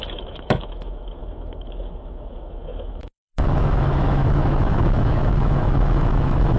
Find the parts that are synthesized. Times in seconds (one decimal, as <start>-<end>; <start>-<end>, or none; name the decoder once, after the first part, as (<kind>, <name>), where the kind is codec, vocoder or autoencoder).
0.0-6.6 (autoencoder, DAC-VAE)